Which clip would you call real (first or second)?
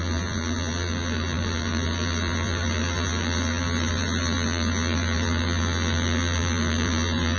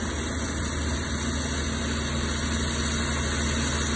second